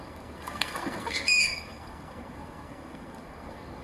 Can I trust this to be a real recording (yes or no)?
no